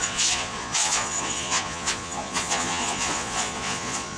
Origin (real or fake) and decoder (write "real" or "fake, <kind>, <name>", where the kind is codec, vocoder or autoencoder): fake, vocoder, Vocos